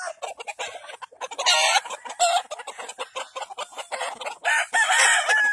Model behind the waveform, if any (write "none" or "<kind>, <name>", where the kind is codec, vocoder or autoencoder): none